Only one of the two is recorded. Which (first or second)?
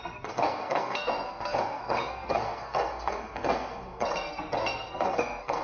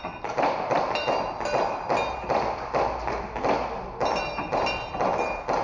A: second